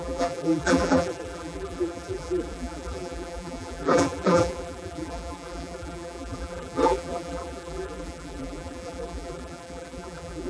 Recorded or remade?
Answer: remade